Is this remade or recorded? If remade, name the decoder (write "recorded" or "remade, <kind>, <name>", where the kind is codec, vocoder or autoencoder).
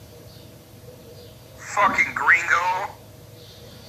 remade, vocoder, BigVGAN v2